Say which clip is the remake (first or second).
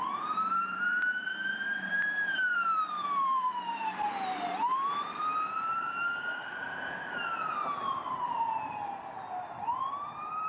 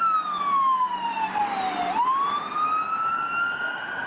first